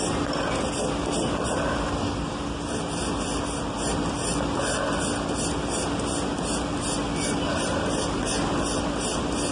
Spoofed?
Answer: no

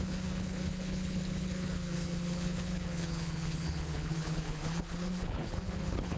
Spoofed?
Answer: yes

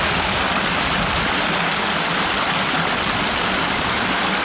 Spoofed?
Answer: no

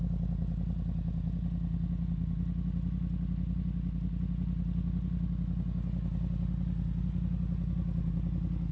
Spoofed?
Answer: no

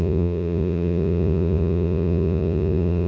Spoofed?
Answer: yes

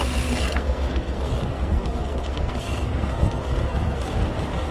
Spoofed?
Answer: yes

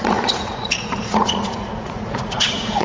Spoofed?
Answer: yes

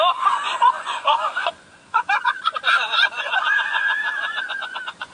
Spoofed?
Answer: yes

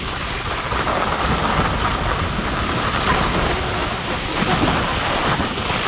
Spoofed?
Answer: no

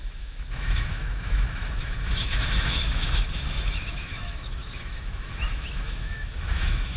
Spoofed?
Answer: yes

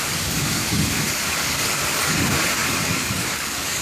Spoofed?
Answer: yes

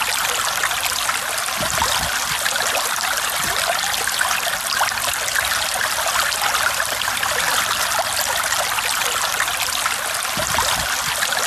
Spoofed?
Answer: no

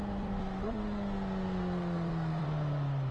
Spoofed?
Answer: yes